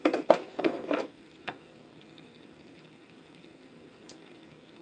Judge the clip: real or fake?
fake